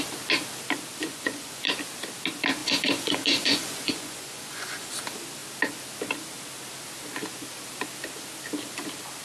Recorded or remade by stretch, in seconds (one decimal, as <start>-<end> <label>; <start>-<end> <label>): 0.0-1.0 recorded; 1.0-1.7 remade; 1.7-2.6 recorded; 2.6-4.9 remade; 4.9-9.2 recorded